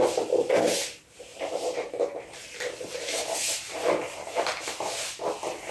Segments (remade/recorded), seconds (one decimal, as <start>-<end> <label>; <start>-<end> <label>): 0.0-1.3 recorded; 1.3-4.7 remade; 4.7-5.7 recorded